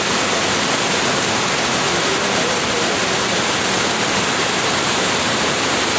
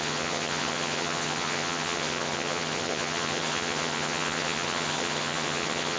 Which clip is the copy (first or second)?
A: second